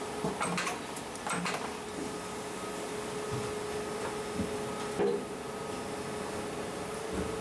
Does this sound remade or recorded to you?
recorded